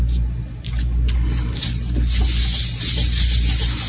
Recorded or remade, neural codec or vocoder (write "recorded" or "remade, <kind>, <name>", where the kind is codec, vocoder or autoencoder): recorded